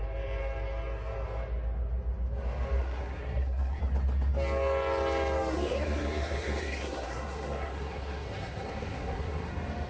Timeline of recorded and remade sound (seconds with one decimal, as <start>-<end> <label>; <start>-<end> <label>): 0.0-2.8 recorded; 2.8-3.8 remade; 3.8-5.5 recorded; 5.5-9.5 remade; 9.5-9.9 recorded